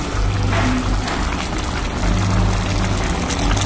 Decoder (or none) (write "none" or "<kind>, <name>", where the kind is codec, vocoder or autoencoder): none